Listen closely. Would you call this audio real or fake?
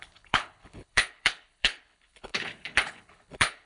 fake